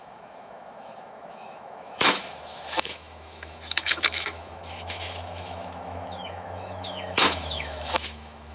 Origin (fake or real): fake